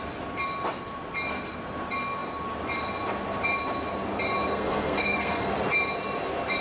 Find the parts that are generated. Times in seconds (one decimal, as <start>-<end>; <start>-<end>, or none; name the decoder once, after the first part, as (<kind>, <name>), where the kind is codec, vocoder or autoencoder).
4.5-5.5 (codec, SNAC)

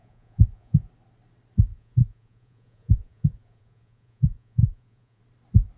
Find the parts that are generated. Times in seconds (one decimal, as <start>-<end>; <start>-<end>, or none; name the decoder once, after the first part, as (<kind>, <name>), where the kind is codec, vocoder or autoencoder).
0.0-0.9 (vocoder, Vocos); 1.7-5.2

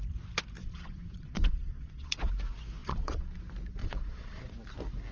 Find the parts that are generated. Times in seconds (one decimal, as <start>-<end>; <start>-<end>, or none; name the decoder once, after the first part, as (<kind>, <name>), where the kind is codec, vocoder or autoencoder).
0.6-2.3 (vocoder, Vocos); 2.8-3.4; 3.8-4.4

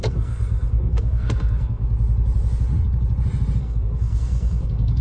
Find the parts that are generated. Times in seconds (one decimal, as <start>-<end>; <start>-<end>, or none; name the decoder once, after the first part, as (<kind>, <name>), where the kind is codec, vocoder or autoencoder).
0.0-1.8 (codec, SNAC); 3.6-5.0

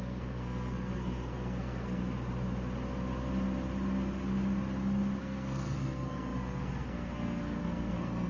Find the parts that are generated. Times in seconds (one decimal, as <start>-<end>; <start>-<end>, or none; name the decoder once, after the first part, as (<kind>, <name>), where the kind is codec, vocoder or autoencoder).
0.0-2.0 (codec, SNAC); 5.2-8.3